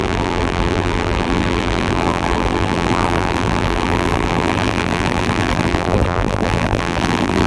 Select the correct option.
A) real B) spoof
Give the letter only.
B